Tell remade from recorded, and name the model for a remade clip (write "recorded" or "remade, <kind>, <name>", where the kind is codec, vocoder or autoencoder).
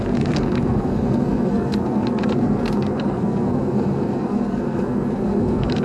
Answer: remade, codec, SNAC